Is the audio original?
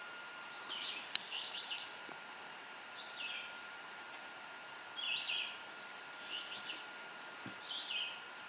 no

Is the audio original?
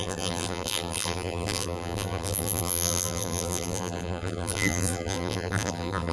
no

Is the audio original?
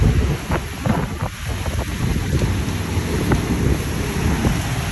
yes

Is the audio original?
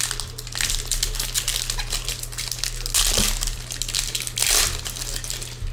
yes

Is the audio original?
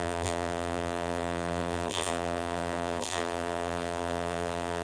no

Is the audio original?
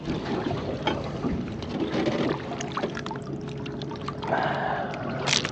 no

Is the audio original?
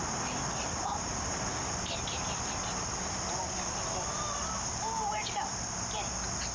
yes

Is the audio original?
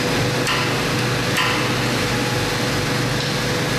yes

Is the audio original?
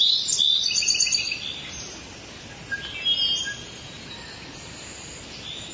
yes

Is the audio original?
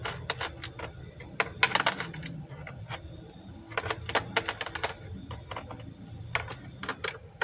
yes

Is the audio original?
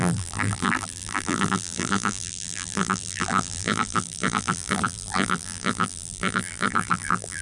no